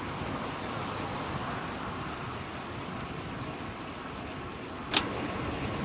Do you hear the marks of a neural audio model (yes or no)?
no